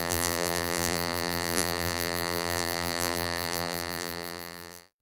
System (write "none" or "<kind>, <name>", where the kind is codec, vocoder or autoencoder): vocoder, BigVGAN v2